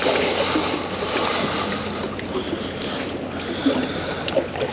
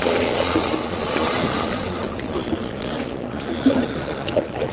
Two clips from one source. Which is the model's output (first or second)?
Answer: second